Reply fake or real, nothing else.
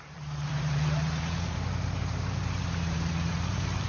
fake